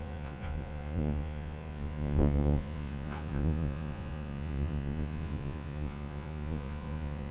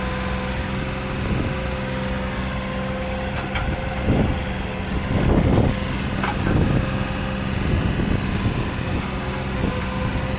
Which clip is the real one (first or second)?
second